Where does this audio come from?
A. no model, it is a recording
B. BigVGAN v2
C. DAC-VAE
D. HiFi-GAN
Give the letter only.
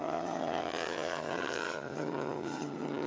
D